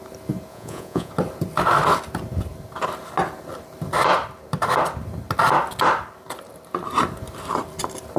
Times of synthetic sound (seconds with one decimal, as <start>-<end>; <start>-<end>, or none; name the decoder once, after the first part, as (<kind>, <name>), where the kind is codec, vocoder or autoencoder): 0.5-1.1 (vocoder, Vocos)